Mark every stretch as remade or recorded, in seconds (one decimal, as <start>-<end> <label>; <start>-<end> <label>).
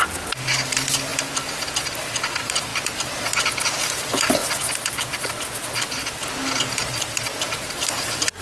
0.0-8.4 recorded